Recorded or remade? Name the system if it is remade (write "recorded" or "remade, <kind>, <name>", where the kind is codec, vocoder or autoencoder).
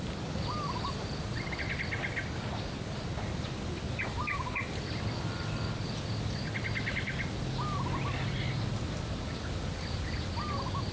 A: recorded